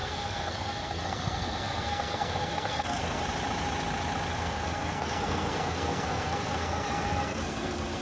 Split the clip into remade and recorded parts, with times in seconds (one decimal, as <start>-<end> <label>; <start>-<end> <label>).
0.0-3.2 remade; 3.2-4.3 recorded; 4.3-8.0 remade